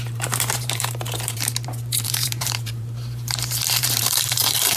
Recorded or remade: remade